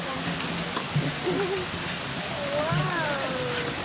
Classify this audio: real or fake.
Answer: real